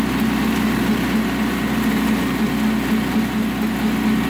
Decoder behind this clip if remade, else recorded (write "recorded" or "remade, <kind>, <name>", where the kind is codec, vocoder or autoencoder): recorded